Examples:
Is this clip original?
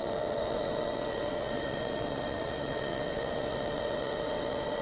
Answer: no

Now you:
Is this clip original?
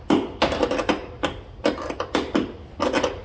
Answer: yes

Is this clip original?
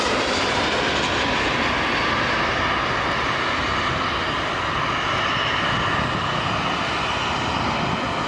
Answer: yes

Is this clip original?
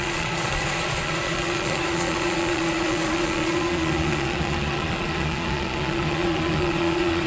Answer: no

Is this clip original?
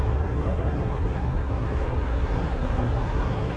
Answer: no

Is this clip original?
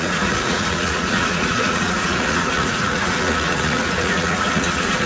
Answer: no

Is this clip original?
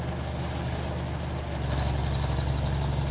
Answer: yes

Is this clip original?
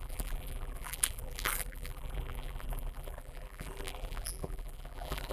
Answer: no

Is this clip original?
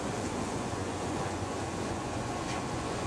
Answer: no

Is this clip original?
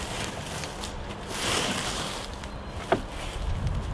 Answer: yes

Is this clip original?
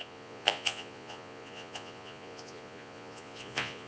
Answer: no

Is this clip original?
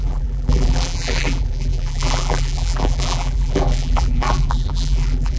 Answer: no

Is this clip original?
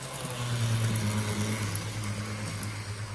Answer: yes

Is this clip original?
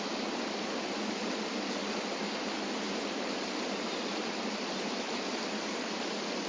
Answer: yes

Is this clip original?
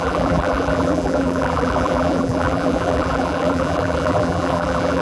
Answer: no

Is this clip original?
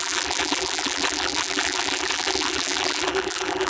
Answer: no